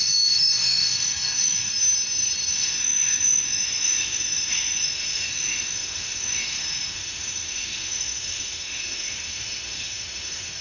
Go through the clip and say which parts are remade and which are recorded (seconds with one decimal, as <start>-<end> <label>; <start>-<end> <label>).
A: 0.0-1.7 remade; 1.7-2.5 recorded; 2.5-10.6 remade